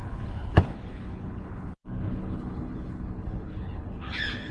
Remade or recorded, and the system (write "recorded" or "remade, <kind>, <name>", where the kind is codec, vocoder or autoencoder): remade, codec, HILCodec